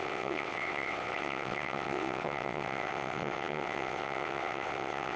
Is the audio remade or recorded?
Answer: remade